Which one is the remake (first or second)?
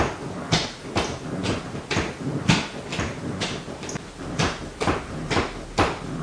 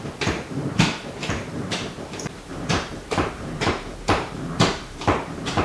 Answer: second